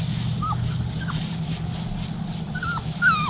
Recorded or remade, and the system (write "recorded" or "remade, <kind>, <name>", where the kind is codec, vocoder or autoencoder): recorded